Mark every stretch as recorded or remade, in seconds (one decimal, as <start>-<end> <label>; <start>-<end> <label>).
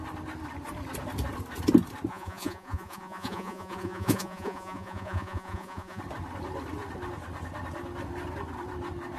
0.0-2.1 recorded; 2.1-6.0 remade; 6.0-9.2 recorded